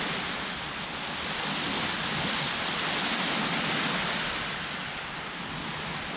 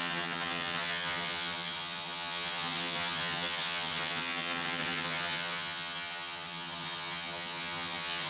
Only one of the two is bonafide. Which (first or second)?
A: first